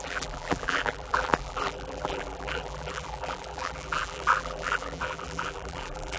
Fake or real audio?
fake